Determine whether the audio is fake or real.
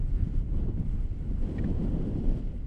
real